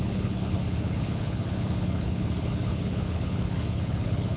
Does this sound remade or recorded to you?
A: remade